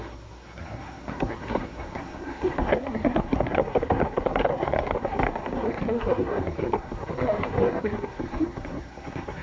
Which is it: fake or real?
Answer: fake